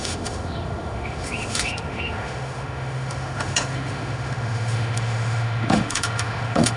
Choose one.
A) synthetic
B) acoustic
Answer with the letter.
A